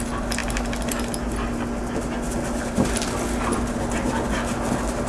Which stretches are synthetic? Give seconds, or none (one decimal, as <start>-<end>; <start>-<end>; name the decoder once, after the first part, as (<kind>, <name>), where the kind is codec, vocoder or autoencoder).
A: none